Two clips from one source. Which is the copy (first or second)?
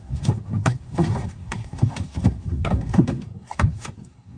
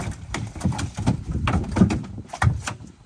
first